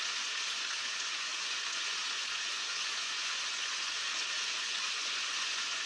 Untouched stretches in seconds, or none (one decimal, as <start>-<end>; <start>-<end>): none